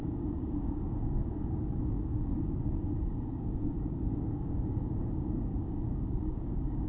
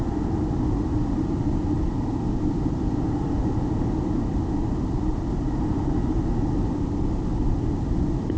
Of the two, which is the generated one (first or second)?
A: first